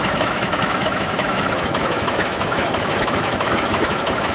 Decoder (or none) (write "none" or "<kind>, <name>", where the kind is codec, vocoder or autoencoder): autoencoder, DAC-VAE